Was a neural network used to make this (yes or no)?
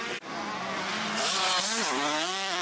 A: no